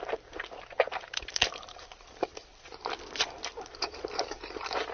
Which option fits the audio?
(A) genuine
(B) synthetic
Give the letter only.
B